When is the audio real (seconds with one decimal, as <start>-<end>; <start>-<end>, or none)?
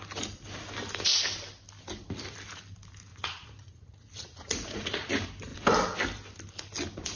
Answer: 0.0-3.1; 5.1-7.2